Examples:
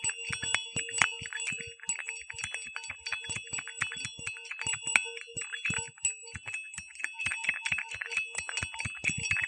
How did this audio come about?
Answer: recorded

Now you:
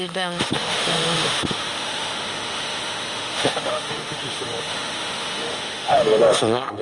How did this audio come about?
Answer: remade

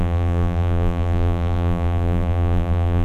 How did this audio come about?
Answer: remade